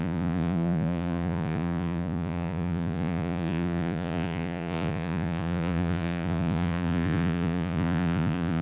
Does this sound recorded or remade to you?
remade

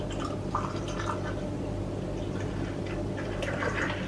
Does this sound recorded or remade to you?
recorded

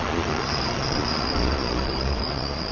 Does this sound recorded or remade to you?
remade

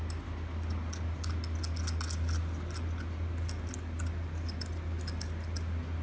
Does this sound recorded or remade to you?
recorded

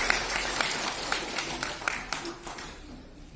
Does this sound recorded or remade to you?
remade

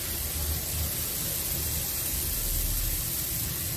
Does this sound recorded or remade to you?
recorded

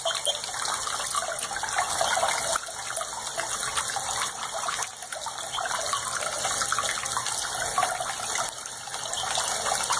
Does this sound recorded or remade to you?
recorded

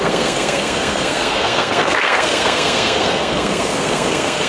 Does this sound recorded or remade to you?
remade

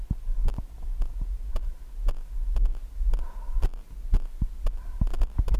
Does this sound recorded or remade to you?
recorded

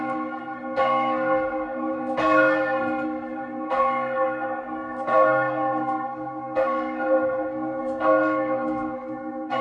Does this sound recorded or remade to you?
remade